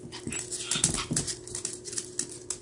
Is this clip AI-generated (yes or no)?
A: no